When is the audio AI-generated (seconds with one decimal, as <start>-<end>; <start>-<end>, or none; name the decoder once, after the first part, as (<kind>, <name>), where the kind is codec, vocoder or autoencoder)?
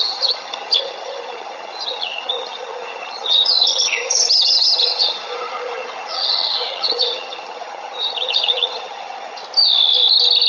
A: 0.0-9.4 (vocoder, HiFi-GAN)